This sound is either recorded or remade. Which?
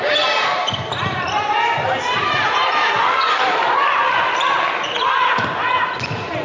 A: recorded